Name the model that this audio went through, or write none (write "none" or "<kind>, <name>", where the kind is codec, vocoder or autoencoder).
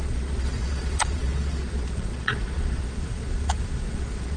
vocoder, Vocos